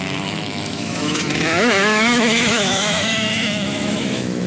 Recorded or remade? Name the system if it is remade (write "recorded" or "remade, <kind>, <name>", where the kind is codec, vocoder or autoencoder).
remade, autoencoder, DAC-VAE